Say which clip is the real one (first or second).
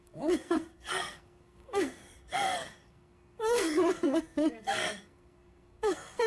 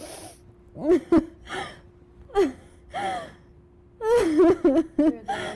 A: second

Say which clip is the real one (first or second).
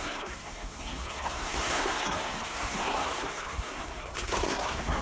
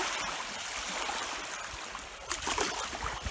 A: second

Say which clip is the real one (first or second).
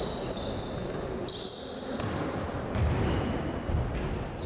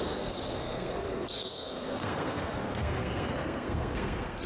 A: first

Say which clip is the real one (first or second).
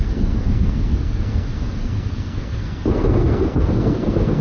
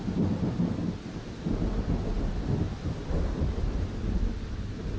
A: second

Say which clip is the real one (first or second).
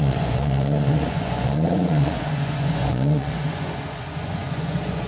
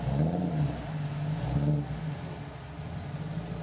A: second